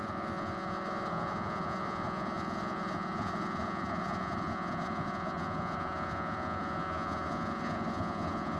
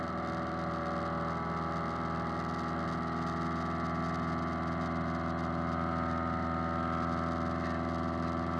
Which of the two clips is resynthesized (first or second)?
first